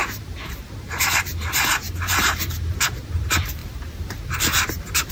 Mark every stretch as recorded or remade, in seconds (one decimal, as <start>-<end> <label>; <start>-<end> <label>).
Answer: 0.0-5.1 remade